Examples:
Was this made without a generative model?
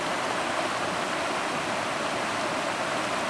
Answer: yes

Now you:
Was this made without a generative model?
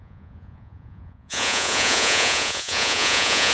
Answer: no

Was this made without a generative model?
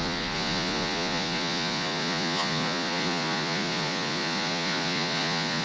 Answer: no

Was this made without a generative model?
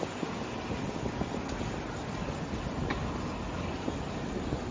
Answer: yes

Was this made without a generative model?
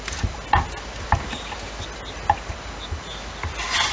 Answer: yes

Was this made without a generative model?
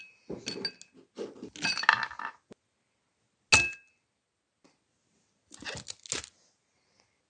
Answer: yes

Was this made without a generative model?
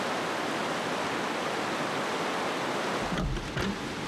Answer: yes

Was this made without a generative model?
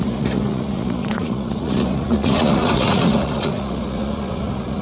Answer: no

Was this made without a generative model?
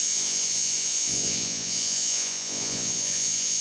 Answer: no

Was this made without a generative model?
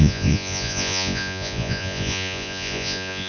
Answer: no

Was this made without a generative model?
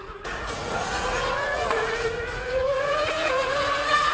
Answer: no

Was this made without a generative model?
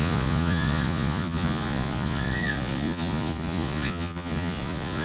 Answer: no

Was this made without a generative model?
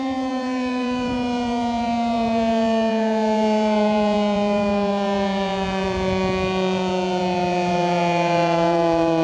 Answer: no